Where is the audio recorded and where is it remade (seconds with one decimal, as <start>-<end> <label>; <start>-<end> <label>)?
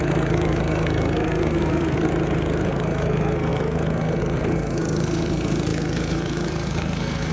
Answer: 0.0-2.1 remade; 2.1-2.7 recorded; 2.7-7.3 remade